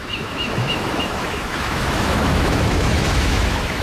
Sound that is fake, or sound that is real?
fake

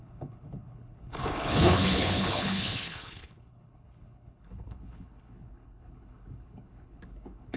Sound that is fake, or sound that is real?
fake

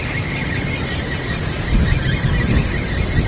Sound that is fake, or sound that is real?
real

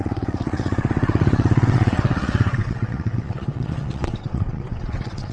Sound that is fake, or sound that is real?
fake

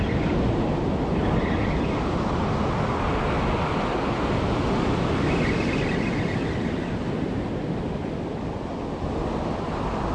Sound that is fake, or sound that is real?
real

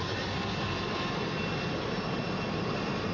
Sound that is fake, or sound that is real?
real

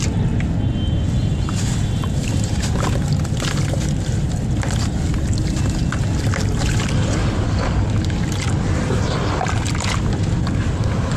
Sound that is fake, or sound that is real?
real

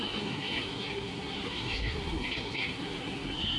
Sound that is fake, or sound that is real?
fake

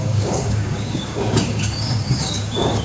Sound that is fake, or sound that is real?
fake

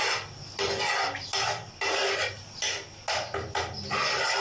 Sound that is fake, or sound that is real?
real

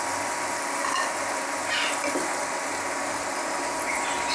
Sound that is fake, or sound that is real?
fake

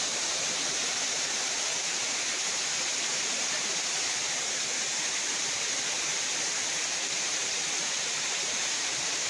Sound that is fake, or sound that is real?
fake